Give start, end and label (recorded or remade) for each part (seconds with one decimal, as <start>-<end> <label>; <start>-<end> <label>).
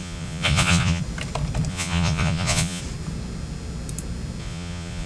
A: 0.0-1.0 remade; 1.0-1.7 recorded; 1.7-2.8 remade; 2.8-4.4 recorded; 4.4-5.1 remade